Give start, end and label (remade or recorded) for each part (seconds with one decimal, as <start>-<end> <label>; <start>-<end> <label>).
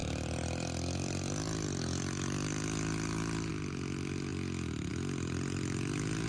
0.0-6.3 recorded